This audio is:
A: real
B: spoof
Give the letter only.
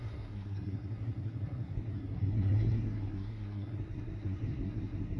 B